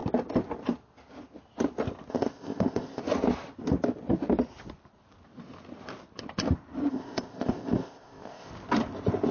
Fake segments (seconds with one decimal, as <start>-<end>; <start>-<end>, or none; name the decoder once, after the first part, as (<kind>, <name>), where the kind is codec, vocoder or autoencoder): 2.1-3.0 (codec, ZipCodec); 6.9-8.5